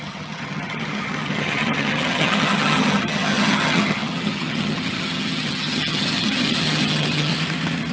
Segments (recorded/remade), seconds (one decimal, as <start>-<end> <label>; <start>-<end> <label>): 0.0-7.3 remade; 7.3-7.9 recorded